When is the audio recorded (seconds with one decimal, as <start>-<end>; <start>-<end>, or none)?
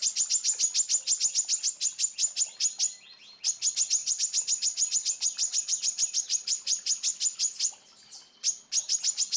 0.0-4.0; 7.7-9.4